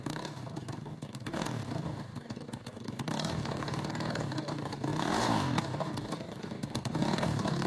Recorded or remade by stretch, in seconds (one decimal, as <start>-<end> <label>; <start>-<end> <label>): 0.0-7.7 remade